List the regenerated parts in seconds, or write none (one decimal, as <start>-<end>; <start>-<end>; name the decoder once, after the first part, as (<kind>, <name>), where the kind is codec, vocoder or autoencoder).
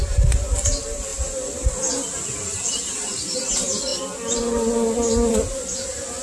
none